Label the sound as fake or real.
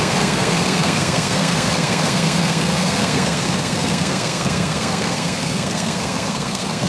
fake